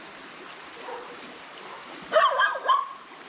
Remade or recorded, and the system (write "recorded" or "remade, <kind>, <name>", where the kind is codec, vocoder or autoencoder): remade, vocoder, BigVGAN v2